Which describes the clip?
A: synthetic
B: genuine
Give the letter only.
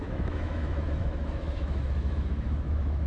A